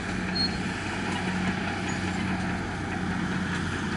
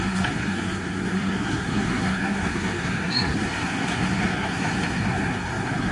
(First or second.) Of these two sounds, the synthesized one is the second